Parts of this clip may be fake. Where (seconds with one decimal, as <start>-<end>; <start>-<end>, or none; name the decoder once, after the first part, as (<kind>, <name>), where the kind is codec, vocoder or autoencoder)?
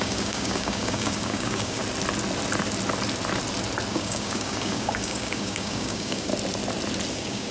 0.0-1.8 (codec, DAC); 3.9-6.3; 7.1-7.5